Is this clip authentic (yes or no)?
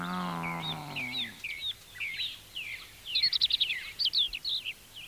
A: yes